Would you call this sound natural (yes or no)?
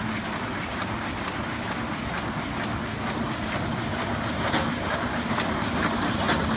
yes